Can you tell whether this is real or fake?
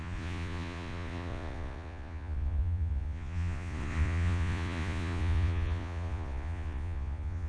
fake